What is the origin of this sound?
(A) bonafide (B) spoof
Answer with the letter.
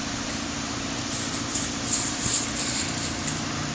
B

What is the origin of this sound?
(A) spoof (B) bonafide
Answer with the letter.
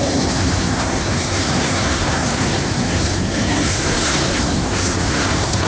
A